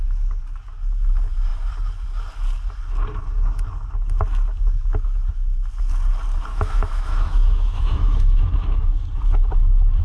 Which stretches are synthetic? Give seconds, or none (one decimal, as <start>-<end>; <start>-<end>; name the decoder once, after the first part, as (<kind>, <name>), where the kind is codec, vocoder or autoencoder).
6.5-8.9 (autoencoder, DAC-VAE)